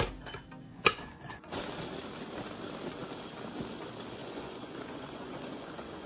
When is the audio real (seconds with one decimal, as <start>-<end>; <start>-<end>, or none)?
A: 0.0-0.7; 1.6-4.2